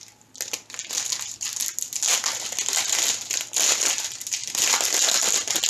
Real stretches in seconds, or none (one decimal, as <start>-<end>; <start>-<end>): 0.0-5.7